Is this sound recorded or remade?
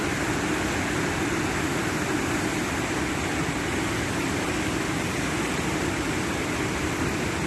recorded